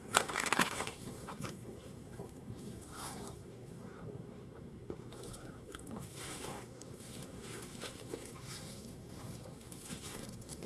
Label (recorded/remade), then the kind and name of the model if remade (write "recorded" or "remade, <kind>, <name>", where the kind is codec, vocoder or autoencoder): remade, codec, SNAC